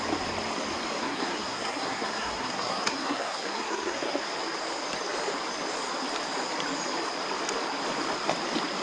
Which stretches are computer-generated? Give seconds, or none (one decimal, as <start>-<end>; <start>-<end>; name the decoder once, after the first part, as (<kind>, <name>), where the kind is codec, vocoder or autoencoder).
1.0-4.2 (codec, SNAC)